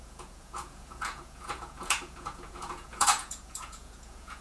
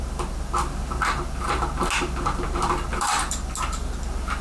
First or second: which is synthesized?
first